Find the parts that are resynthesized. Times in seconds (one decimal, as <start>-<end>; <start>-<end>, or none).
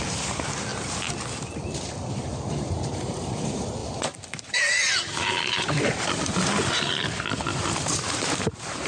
0.0-0.7; 2.1-8.9